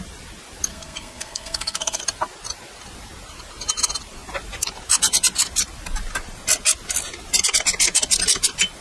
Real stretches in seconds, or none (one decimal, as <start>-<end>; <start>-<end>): 0.0-0.7; 2.0-8.8